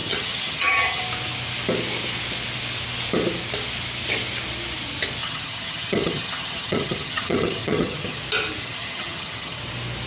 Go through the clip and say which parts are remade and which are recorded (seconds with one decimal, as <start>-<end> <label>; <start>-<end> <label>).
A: 0.0-1.0 remade; 1.0-5.2 recorded; 5.2-8.2 remade; 8.2-8.6 recorded; 8.6-9.6 remade; 9.6-10.1 recorded